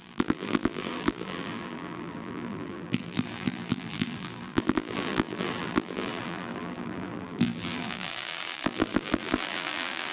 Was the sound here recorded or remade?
remade